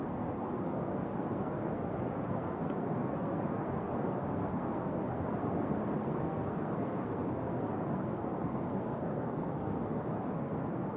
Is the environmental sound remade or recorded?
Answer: remade